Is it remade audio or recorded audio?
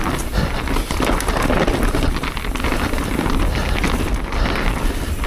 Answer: recorded